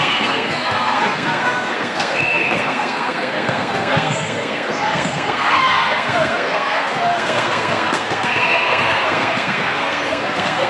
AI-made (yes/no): yes